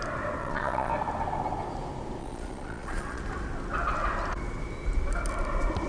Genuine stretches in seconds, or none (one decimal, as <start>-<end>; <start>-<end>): 0.0-0.4; 0.9-2.2; 3.2-5.9